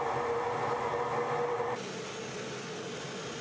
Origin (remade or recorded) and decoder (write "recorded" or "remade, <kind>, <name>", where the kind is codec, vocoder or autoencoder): recorded